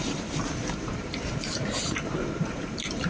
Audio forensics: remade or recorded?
remade